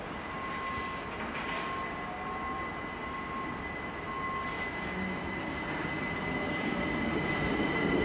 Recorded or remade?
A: recorded